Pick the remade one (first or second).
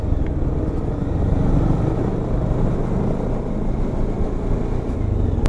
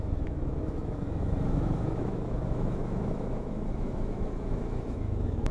second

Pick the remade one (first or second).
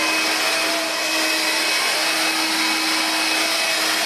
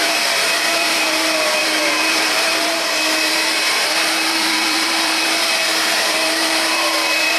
second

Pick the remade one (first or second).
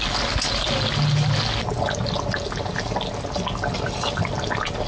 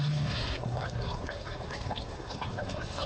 second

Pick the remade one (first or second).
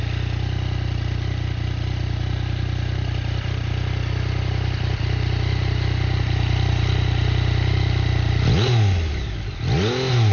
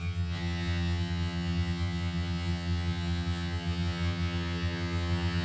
second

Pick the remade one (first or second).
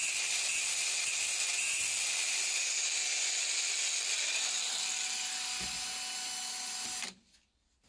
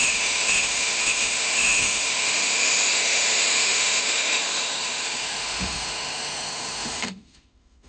second